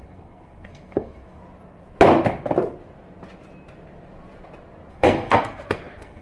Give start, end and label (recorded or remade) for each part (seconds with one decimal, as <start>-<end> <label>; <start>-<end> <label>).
0.0-1.4 remade; 1.4-4.9 recorded; 4.9-6.2 remade